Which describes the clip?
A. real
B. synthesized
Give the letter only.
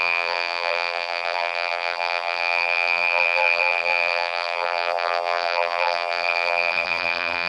B